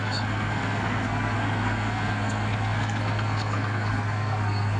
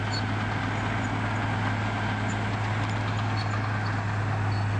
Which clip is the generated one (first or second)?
first